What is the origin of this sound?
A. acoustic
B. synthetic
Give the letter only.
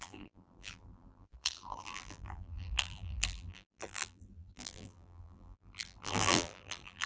B